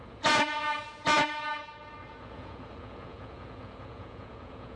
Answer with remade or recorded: remade